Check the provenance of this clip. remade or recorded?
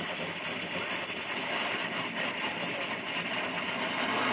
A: remade